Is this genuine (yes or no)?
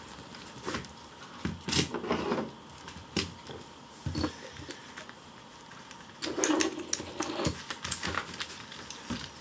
yes